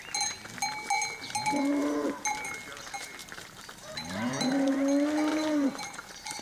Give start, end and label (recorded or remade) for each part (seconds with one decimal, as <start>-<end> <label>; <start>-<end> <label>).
0.0-3.2 recorded; 3.2-4.7 remade; 4.7-5.3 recorded; 5.3-6.4 remade